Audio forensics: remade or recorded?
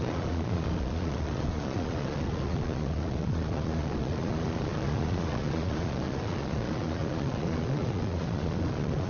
remade